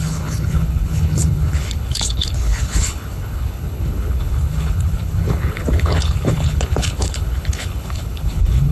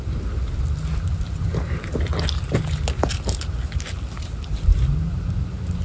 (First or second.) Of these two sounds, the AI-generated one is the first